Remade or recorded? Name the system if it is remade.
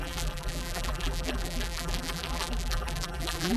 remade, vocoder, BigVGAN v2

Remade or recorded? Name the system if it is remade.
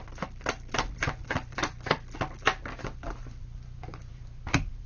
remade, vocoder, BigVGAN v2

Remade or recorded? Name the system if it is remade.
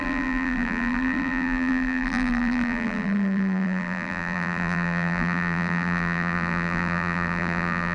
remade, vocoder, BigVGAN v2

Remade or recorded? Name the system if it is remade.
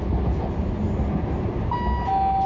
recorded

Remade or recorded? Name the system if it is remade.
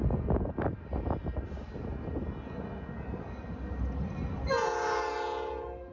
recorded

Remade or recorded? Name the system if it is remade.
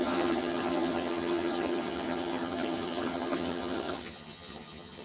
remade, vocoder, HiFi-GAN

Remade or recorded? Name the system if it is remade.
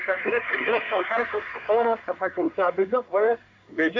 remade, codec, SNAC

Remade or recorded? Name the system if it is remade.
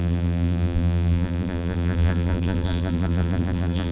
remade, vocoder, BigVGAN v2